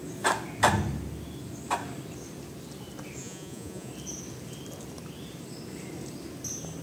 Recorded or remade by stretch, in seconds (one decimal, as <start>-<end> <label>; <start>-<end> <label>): 0.0-3.2 recorded; 3.2-3.9 remade; 3.9-6.8 recorded